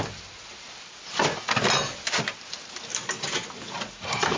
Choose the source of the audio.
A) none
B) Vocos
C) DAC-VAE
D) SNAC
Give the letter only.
A